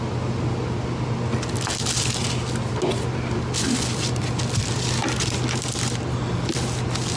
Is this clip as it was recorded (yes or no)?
yes